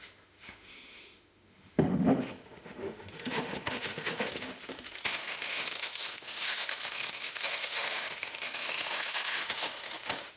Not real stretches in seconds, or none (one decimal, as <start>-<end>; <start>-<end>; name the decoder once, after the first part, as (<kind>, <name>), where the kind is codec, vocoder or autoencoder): 0.0-10.4 (autoencoder, DAC-VAE)